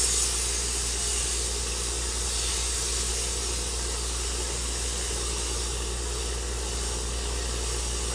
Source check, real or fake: real